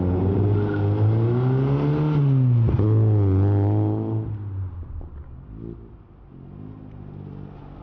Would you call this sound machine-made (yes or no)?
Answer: no